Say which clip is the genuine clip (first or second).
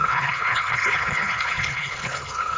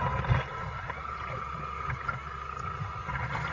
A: second